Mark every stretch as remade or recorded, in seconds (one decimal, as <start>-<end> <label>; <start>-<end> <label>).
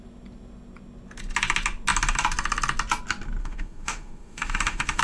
0.0-3.4 recorded; 3.4-5.0 remade